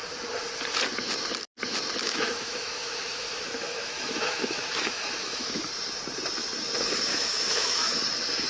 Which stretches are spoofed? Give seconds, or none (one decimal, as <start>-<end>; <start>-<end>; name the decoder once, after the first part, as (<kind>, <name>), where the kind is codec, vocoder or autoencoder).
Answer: 2.0-5.6 (autoencoder, DAC-VAE); 7.1-8.0